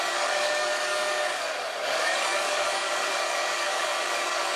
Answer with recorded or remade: remade